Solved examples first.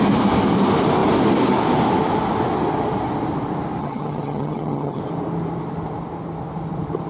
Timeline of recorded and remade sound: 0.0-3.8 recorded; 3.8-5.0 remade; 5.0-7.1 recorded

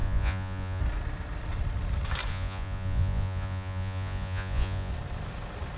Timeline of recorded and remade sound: 0.0-0.8 remade; 0.8-2.3 recorded; 2.3-4.9 remade; 4.9-5.8 recorded

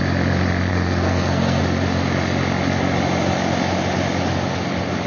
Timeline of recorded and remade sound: 0.0-0.7 recorded; 0.7-1.6 remade; 1.6-5.1 recorded

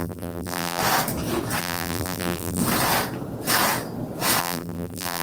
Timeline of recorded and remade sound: 0.0-0.8 remade; 0.8-1.6 recorded; 1.6-2.6 remade; 2.6-4.4 recorded; 4.4-5.2 remade

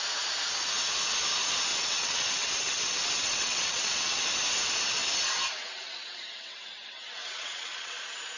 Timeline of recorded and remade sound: 0.0-1.7 recorded; 1.7-4.2 remade; 4.2-5.6 recorded; 5.6-8.0 remade; 8.0-8.4 recorded

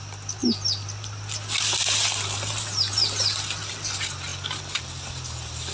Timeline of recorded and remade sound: 0.0-5.7 recorded

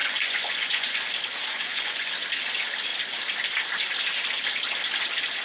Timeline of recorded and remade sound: 0.0-1.0 remade; 1.0-1.5 recorded; 1.5-2.1 remade; 2.1-5.4 recorded

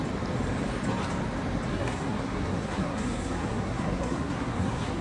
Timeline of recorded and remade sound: 0.0-1.7 recorded; 1.7-5.0 remade